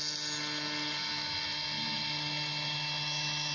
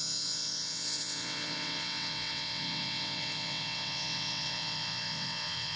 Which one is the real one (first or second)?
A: first